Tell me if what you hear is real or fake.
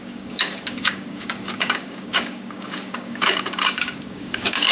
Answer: fake